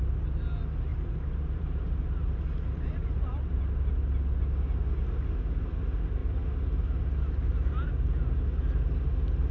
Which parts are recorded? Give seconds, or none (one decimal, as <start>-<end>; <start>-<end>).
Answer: 0.0-0.9; 3.6-9.5